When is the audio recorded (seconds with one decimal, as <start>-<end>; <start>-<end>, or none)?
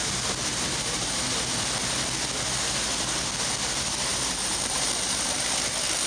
0.0-0.5; 1.3-4.1